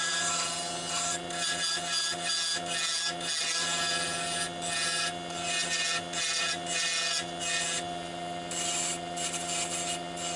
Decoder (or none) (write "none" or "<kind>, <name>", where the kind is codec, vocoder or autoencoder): none